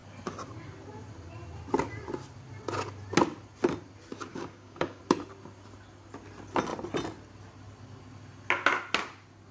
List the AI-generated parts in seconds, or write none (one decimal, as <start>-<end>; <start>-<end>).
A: 4.3-5.0